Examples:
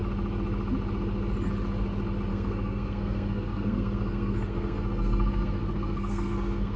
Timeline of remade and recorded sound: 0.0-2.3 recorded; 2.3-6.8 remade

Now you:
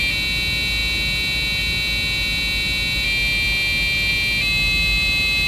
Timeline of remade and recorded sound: 0.0-5.5 recorded

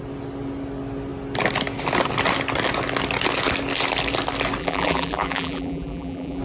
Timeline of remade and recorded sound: 0.0-4.6 recorded; 4.6-6.4 remade

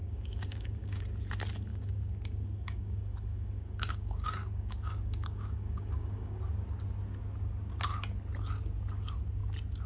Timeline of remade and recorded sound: 0.0-1.0 remade; 1.0-1.7 recorded; 1.7-6.5 remade; 6.5-9.9 recorded

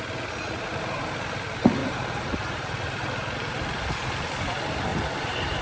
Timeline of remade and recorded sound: 0.0-1.8 recorded; 1.8-4.2 remade; 4.2-4.9 recorded; 4.9-5.6 remade

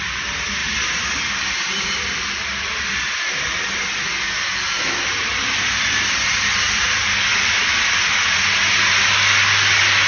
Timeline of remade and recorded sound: 0.0-0.6 recorded; 0.6-3.8 remade; 3.8-5.3 recorded; 5.3-7.6 remade; 7.6-10.1 recorded